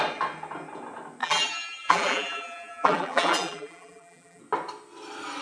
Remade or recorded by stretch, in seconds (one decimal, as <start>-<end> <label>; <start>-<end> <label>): 0.0-1.2 recorded; 1.2-4.4 remade; 4.4-5.4 recorded